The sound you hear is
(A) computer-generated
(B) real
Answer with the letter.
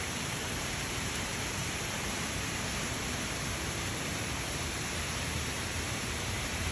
A